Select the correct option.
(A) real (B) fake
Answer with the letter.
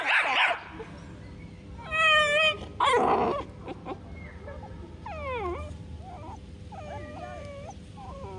A